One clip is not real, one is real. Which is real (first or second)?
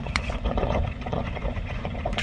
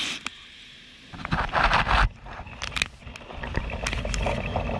second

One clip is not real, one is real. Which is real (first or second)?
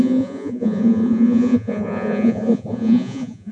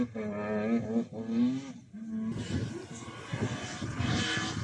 second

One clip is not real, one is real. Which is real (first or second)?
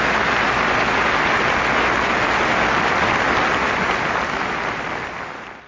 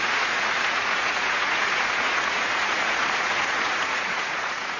first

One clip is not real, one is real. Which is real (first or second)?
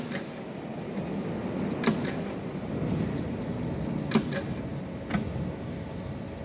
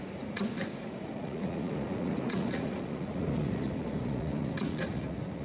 first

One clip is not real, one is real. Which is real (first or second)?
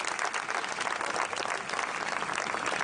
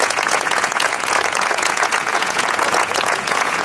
first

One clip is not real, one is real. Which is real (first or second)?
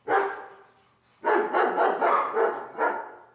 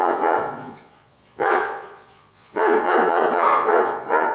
first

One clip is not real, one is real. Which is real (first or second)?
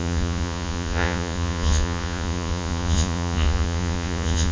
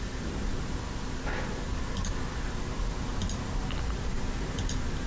second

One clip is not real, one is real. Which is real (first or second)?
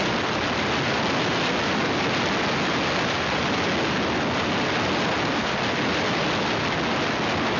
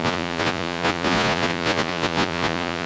first